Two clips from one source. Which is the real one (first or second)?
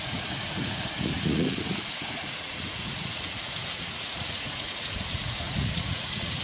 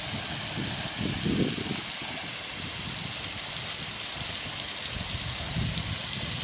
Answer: second